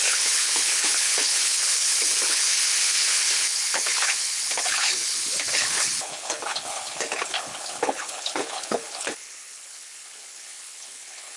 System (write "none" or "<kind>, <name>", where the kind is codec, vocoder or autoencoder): codec, HILCodec